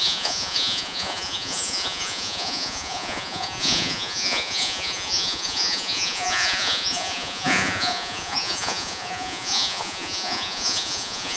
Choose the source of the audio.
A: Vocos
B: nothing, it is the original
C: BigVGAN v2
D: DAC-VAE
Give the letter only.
A